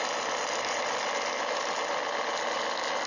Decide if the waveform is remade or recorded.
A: recorded